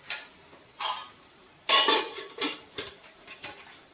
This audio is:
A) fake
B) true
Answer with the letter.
A